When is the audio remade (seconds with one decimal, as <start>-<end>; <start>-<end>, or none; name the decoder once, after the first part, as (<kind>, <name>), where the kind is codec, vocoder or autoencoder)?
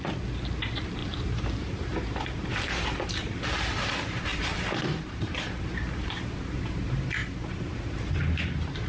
1.0-3.9 (vocoder, BigVGAN v2); 4.3-6.6; 7.2-8.9